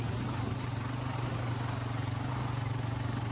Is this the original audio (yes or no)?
yes